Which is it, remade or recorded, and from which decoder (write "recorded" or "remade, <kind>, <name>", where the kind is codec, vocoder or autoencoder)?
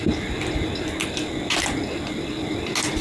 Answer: recorded